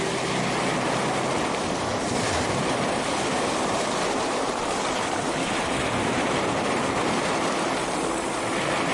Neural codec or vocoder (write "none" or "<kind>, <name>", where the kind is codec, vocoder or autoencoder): vocoder, BigVGAN v2